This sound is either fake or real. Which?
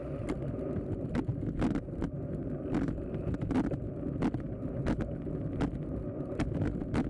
real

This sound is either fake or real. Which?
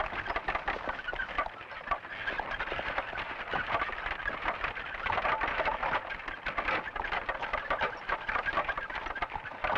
real